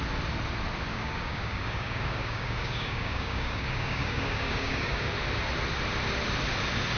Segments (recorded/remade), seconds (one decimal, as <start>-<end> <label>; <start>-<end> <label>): 0.0-0.9 recorded; 0.9-5.1 remade; 5.1-7.0 recorded